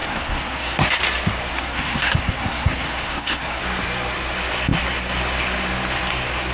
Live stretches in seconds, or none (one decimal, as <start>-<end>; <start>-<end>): 1.0-1.5; 3.6-6.5